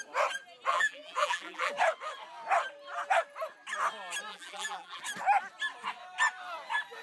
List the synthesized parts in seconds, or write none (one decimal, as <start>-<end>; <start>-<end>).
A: 0.7-1.7; 4.3-5.0